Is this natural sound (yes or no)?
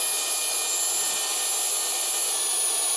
yes